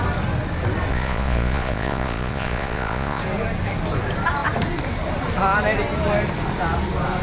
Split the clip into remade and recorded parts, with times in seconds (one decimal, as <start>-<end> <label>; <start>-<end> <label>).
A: 0.0-0.9 recorded; 0.9-3.2 remade; 3.2-7.2 recorded